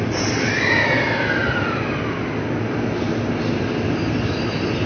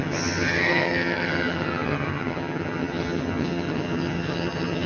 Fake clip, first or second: second